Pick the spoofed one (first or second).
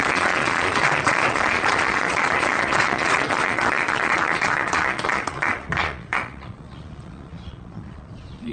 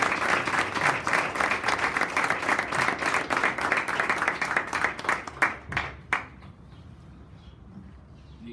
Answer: first